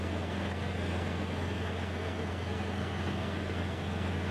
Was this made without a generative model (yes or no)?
no